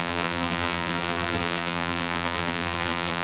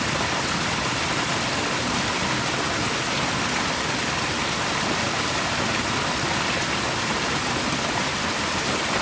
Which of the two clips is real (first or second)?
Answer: second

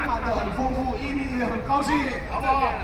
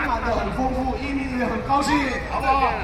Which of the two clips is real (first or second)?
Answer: second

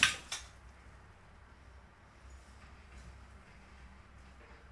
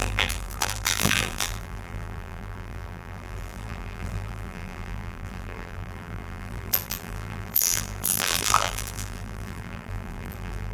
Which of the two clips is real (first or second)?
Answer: first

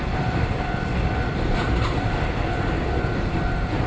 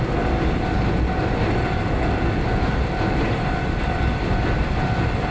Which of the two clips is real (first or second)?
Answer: second